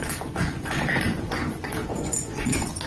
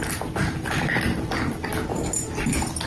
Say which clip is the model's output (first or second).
first